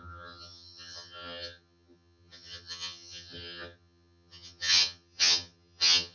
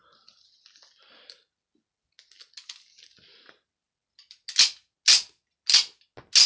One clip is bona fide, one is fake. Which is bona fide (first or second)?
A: second